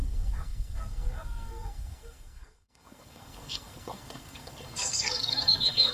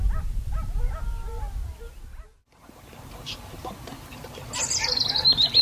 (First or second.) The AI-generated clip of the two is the first